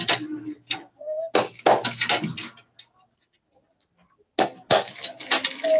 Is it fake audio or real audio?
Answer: real